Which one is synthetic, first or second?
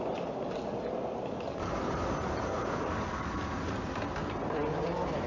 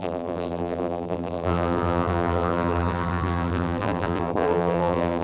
second